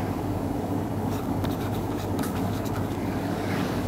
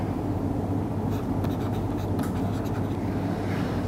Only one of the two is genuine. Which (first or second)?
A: second